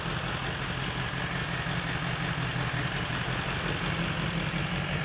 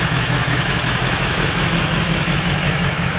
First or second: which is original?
first